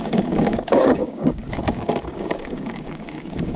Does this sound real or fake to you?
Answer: fake